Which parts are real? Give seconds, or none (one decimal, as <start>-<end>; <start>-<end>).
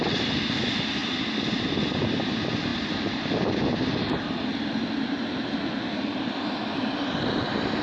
0.0-7.8